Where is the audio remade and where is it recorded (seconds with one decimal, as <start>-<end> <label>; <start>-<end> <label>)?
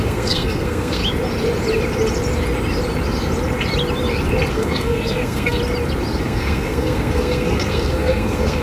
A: 0.0-1.0 remade; 1.0-4.5 recorded; 4.5-5.6 remade; 5.6-6.2 recorded; 6.2-8.6 remade